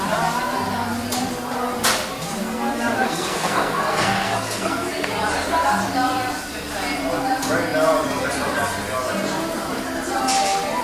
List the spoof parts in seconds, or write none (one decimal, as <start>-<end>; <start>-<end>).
2.4-5.1